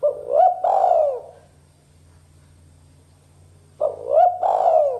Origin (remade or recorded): recorded